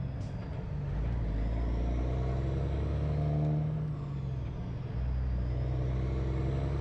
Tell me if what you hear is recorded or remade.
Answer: recorded